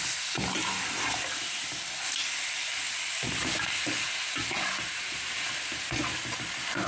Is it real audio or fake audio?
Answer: real